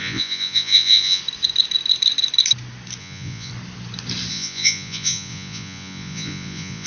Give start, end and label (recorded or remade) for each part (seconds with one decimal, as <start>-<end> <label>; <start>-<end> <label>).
0.0-1.2 remade; 1.2-3.0 recorded; 3.0-3.5 remade; 3.5-4.3 recorded; 4.3-6.9 remade